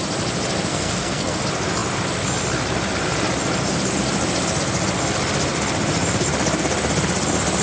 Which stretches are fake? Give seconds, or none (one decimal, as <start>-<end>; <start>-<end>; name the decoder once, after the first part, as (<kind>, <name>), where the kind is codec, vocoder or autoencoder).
0.7-1.4 (codec, SNAC)